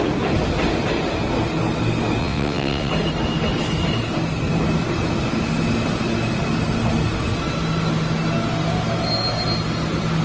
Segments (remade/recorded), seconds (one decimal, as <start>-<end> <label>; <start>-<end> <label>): 0.0-2.2 recorded; 2.2-2.9 remade; 2.9-10.2 recorded